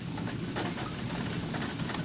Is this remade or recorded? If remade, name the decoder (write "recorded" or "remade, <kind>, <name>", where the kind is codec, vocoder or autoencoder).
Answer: recorded